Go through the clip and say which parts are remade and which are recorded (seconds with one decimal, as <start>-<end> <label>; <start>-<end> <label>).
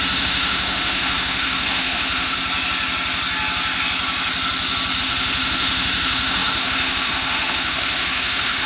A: 0.0-2.4 remade; 2.4-5.0 recorded; 5.0-8.7 remade